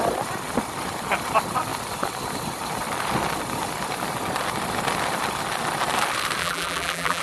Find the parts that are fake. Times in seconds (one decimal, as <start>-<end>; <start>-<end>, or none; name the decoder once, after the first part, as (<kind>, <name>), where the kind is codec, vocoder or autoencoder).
6.4-7.2 (vocoder, BigVGAN v2)